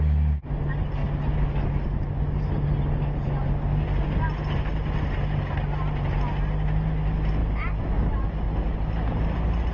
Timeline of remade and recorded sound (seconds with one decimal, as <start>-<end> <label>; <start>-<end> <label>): 0.0-9.7 recorded